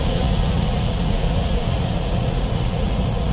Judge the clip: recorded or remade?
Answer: remade